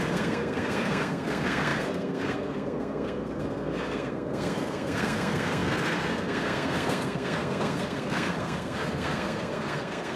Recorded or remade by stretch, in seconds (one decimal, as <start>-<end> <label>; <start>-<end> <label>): 0.0-10.2 remade